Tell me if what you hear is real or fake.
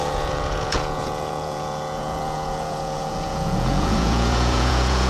fake